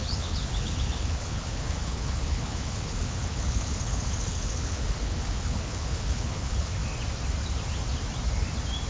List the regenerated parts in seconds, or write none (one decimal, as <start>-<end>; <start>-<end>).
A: 0.0-6.8